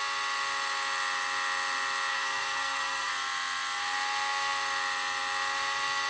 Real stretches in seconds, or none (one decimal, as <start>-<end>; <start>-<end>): 0.0-2.1; 3.1-6.1